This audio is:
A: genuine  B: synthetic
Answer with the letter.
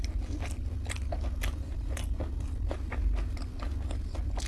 A